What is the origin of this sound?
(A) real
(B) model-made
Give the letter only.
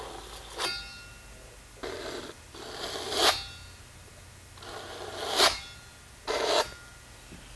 A